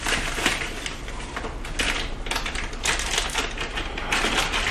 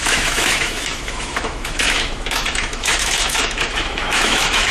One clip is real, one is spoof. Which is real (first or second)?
first